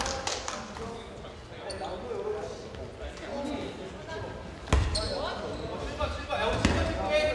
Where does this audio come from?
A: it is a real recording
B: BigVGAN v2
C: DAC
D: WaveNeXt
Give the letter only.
A